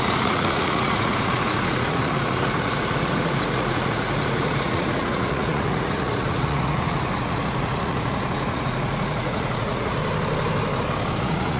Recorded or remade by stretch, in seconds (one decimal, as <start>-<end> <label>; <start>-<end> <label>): 0.0-10.0 remade; 10.0-11.2 recorded; 11.2-11.6 remade